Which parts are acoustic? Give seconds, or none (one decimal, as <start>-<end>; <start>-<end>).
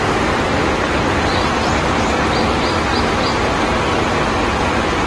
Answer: 0.0-5.1